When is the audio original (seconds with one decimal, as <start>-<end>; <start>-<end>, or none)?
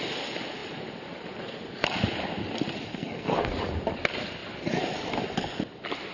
0.0-2.9; 3.5-6.1